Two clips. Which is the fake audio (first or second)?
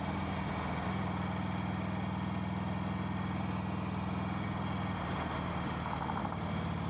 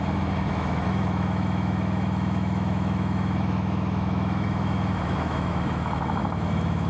second